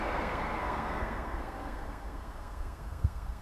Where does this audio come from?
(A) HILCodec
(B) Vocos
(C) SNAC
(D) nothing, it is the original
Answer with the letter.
C